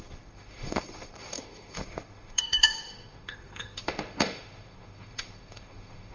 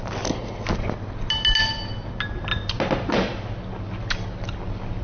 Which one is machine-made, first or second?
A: first